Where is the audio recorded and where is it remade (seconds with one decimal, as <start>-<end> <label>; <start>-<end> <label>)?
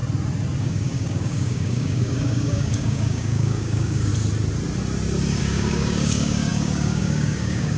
0.0-0.6 recorded; 0.6-4.1 remade; 4.1-5.4 recorded; 5.4-7.8 remade